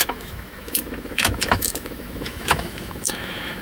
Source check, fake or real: fake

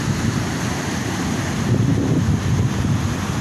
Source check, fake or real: real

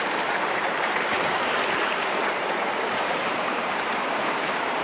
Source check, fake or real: fake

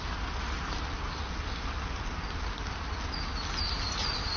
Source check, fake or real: real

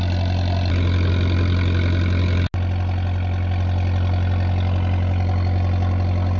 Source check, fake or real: real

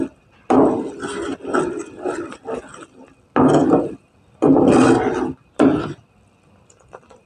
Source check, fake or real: real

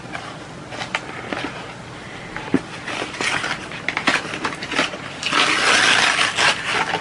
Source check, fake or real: real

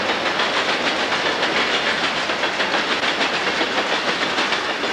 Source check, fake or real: real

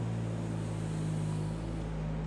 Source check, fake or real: real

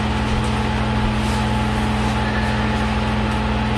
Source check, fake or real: real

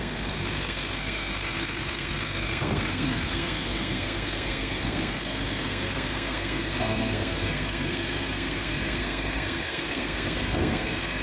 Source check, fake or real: fake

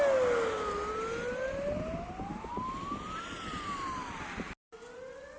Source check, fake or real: real